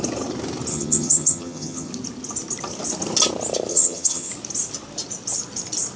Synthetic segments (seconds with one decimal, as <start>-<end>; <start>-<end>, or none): 0.7-1.9; 3.7-4.3